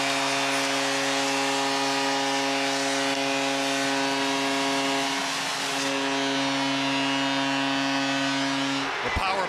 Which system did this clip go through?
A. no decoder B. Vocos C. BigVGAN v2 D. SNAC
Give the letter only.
A